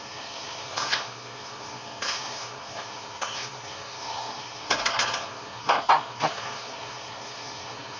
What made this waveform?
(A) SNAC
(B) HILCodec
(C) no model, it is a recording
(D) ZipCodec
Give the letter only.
A